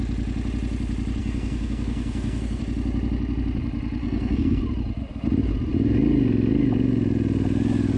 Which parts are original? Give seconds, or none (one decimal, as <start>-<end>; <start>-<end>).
0.0-1.2; 2.6-4.0; 4.6-8.0